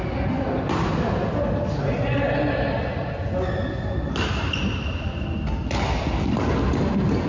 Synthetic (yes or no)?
no